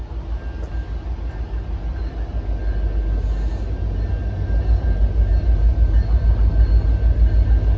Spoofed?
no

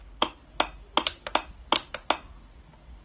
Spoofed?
no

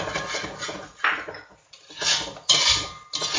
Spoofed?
no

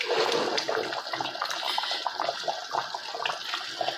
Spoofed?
no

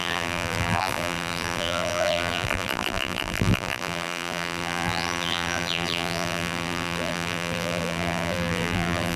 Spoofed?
yes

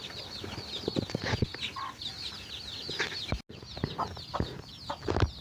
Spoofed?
no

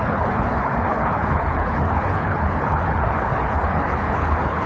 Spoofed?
yes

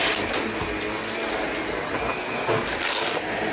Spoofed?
no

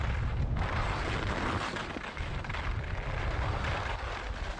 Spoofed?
no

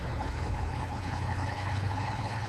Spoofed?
yes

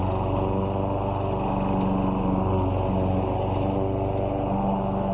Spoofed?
no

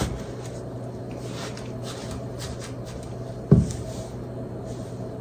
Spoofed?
no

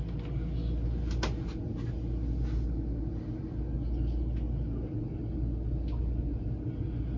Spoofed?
no